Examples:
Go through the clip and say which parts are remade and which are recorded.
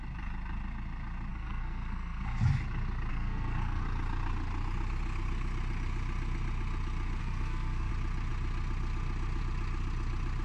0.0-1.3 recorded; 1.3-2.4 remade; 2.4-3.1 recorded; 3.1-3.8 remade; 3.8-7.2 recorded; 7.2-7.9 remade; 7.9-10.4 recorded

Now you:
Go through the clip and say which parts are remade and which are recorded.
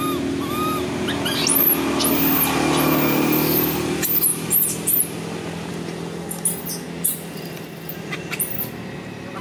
0.0-9.4 recorded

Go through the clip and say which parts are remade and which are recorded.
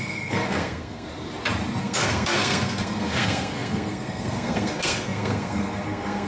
0.0-1.1 remade; 1.1-1.8 recorded; 1.8-6.3 remade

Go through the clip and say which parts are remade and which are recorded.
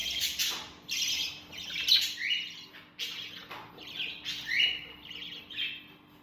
0.0-6.2 recorded